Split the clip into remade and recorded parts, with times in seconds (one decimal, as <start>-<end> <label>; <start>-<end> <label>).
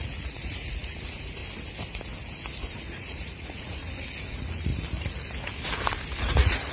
0.0-1.4 remade; 1.4-2.8 recorded; 2.8-3.8 remade; 3.8-4.3 recorded; 4.3-4.7 remade; 4.7-6.2 recorded; 6.2-6.7 remade